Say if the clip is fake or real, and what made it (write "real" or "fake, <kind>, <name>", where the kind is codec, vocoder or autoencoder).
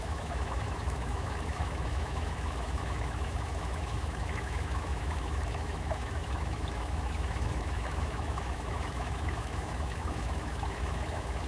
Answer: fake, autoencoder, DAC-VAE